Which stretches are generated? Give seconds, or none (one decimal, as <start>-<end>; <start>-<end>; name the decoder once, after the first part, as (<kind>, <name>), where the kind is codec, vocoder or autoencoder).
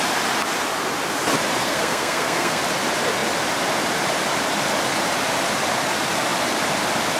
1.6-2.6 (codec, SNAC)